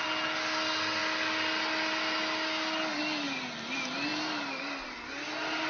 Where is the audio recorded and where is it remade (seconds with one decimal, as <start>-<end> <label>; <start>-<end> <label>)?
0.0-5.7 recorded